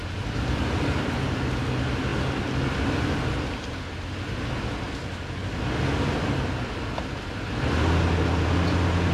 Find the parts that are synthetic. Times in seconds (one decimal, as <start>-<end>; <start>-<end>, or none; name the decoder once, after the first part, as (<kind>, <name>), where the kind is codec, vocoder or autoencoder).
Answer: none